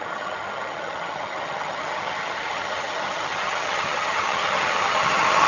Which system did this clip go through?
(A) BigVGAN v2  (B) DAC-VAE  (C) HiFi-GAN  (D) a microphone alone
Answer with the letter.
C